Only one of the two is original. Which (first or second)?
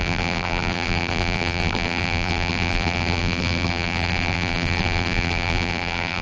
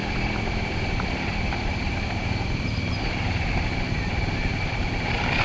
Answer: second